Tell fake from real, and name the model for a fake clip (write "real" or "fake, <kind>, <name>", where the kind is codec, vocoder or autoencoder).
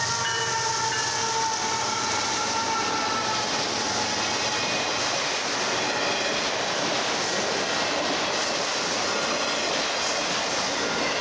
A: real